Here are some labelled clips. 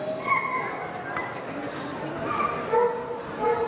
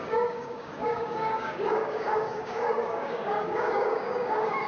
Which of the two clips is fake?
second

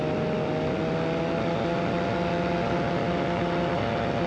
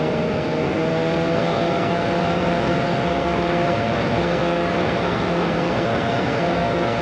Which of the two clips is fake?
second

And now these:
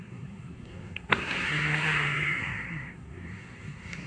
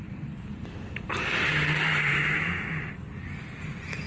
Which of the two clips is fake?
first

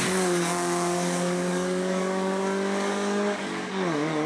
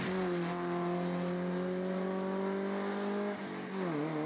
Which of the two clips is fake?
first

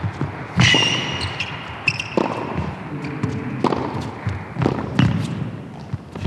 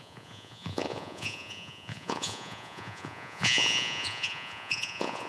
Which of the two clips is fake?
second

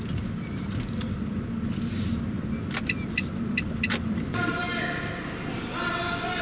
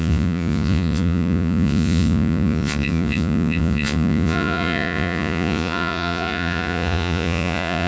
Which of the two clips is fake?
second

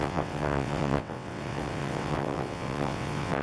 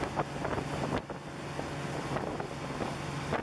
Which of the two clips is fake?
first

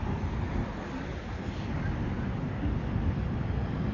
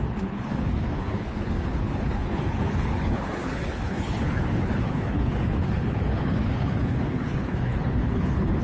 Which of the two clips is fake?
second